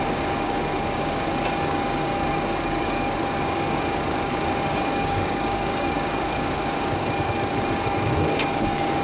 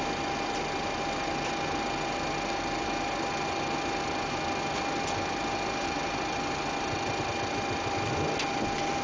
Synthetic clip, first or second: first